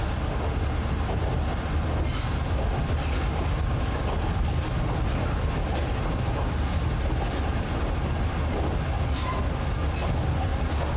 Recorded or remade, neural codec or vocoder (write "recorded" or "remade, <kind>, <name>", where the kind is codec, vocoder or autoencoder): recorded